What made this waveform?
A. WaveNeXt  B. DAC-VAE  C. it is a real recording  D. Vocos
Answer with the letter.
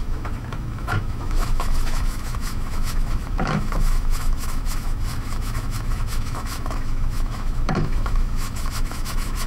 B